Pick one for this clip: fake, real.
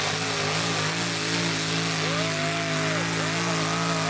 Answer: real